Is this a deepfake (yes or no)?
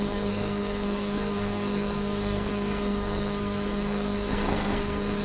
yes